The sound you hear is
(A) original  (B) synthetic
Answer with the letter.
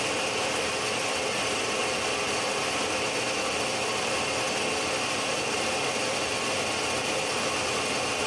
A